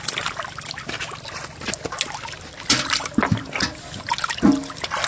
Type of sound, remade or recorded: recorded